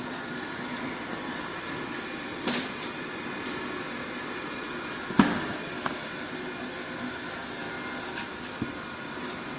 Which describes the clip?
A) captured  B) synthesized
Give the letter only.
A